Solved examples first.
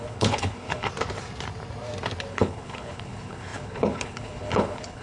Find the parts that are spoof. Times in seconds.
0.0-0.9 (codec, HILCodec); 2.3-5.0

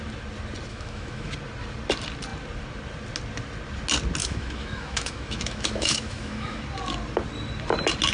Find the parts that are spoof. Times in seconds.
0.7-1.3 (autoencoder, DAC-VAE); 4.2-6.6